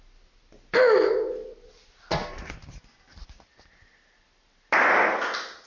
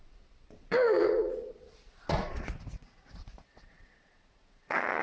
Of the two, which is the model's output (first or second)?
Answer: second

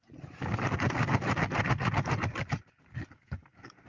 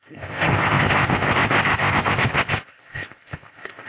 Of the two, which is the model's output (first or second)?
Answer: second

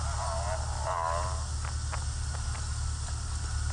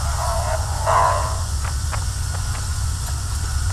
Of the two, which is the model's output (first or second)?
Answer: second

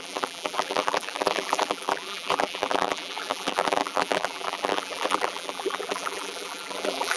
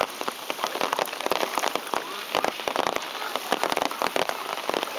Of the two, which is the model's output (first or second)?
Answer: first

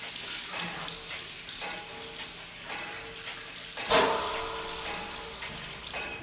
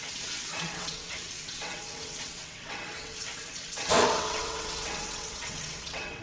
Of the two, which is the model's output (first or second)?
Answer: second